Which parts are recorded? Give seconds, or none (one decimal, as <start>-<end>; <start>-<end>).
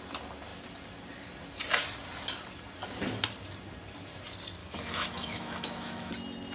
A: 0.0-4.6; 6.1-6.5